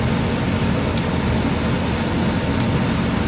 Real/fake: real